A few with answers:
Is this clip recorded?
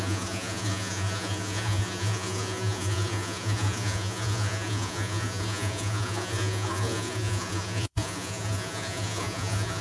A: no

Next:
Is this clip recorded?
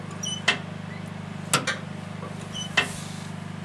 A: yes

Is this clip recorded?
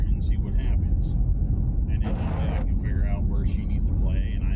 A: yes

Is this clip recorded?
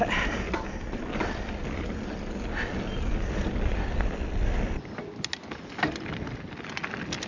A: yes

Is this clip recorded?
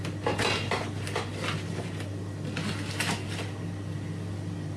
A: yes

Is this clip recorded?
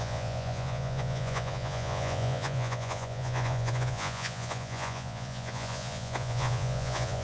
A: no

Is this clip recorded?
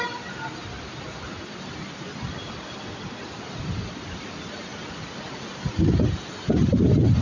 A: yes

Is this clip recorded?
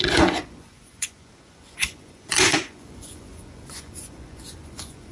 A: no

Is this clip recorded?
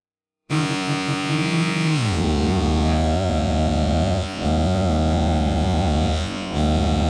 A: no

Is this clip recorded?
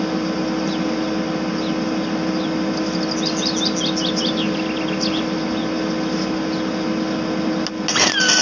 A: yes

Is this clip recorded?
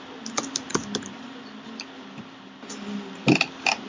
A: yes